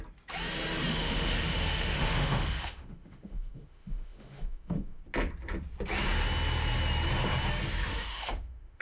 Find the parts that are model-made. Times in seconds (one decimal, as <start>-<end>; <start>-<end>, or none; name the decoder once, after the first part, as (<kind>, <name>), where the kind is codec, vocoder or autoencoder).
0.9-5.0 (autoencoder, DAC-VAE); 7.9-8.8